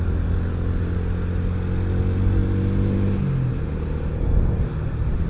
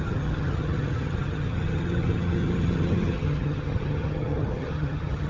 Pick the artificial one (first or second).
second